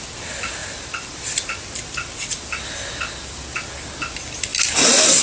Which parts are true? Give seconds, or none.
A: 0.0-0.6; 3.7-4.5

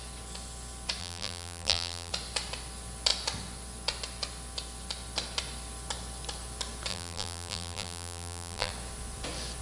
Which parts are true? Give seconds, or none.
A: 0.0-1.0; 2.1-6.9; 8.7-9.6

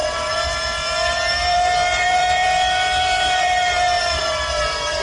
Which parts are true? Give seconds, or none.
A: none